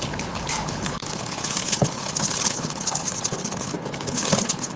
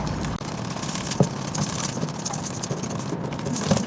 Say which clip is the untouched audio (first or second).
second